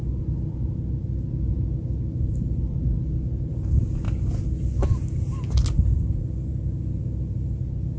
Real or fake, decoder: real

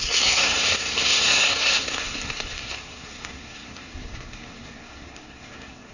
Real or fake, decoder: fake, codec, SNAC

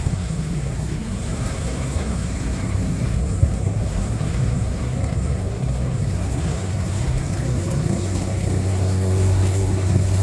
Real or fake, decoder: fake, codec, SNAC